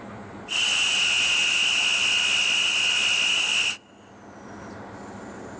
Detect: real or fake real